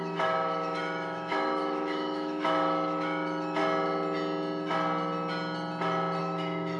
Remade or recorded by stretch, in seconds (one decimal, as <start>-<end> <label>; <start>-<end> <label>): 0.0-3.6 remade; 3.6-6.2 recorded; 6.2-6.8 remade